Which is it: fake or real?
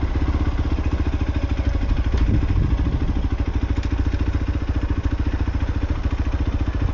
real